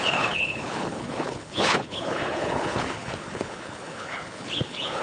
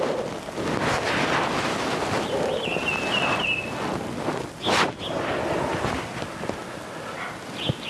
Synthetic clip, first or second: first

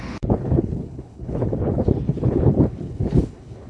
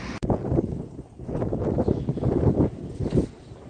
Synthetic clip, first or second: first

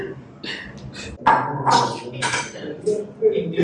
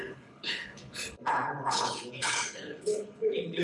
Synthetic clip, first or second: second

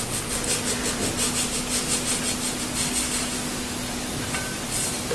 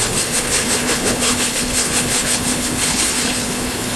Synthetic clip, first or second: second